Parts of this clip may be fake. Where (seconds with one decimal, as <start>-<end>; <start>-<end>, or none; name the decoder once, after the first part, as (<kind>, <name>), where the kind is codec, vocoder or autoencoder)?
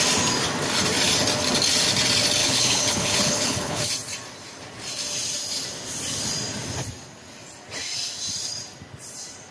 2.4-3.8 (codec, HILCodec)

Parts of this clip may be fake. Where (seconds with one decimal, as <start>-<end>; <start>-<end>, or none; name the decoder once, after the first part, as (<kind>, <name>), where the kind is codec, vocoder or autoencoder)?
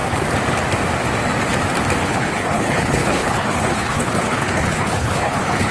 2.0-5.7 (codec, HILCodec)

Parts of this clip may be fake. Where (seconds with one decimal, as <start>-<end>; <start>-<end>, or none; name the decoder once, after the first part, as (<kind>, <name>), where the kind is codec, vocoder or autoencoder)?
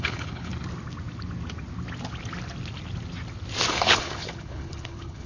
0.0-0.5 (codec, HILCodec); 3.7-5.3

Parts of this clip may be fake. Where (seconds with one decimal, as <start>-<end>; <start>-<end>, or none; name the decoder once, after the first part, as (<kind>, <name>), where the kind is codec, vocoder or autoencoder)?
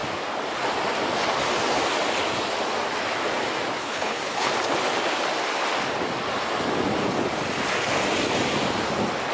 3.8-4.5 (codec, HILCodec)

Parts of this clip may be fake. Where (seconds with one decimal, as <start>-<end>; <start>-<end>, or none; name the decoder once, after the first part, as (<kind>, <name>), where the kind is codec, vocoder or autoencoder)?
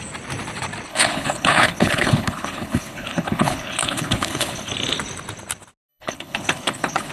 0.9-4.7 (codec, HILCodec); 5.9-7.1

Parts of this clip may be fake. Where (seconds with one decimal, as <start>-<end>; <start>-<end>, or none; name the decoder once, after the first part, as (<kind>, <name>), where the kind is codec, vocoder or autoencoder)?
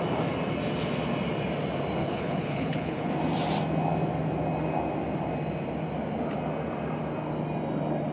2.0-3.1 (codec, HILCodec)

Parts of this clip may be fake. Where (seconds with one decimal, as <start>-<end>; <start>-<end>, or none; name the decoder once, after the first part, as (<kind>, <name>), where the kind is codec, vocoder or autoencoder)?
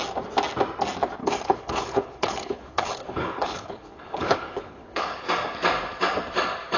1.2-5.3 (codec, HILCodec)